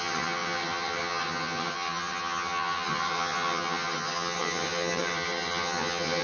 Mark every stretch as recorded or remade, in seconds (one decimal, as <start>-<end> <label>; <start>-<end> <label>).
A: 0.0-6.2 remade